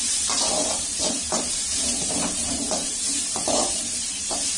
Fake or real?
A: fake